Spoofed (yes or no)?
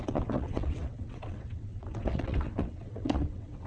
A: yes